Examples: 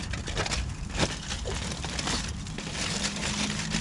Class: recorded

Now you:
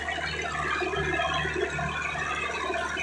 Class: recorded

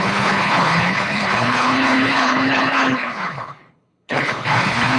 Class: remade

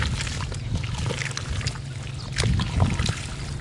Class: recorded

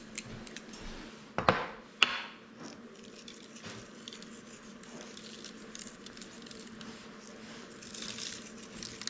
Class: recorded